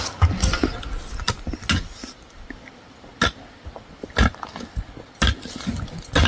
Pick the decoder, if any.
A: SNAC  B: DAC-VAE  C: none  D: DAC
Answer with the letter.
C